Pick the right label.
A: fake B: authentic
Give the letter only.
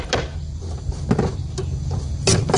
B